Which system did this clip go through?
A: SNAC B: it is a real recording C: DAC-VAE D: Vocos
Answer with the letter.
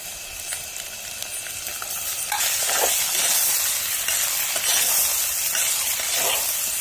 B